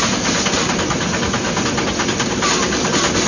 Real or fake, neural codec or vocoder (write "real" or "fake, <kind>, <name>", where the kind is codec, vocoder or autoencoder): real